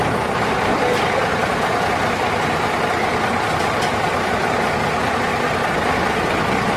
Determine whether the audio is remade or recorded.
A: remade